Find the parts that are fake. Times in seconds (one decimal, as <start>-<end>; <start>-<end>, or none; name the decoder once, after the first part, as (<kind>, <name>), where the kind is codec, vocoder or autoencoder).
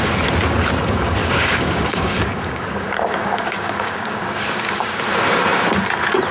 1.2-5.0 (codec, DAC)